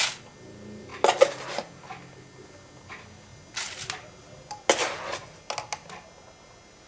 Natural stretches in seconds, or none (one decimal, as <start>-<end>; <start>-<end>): 0.0-6.9